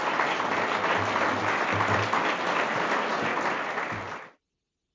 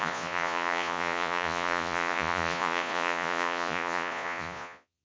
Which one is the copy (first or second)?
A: second